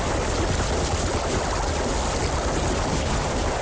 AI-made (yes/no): no